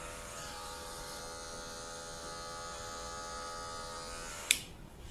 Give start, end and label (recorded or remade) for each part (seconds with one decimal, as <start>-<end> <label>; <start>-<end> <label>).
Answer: 0.0-1.2 remade; 1.2-4.3 recorded; 4.3-5.1 remade

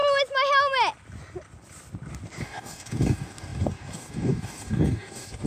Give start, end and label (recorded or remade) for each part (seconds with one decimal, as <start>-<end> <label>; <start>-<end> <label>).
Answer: 0.0-2.4 recorded; 2.4-5.5 remade